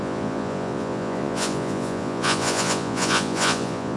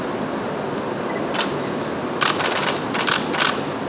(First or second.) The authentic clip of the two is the second